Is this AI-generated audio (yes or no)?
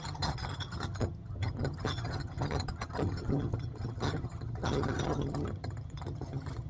yes